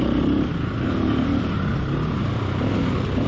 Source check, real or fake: real